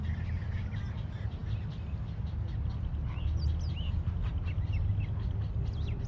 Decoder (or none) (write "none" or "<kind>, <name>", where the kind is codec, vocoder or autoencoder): none